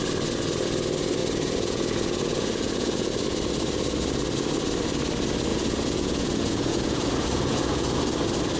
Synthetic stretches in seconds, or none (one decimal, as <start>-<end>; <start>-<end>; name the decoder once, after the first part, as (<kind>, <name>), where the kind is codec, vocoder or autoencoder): 1.2-3.1 (vocoder, Vocos); 5.5-8.0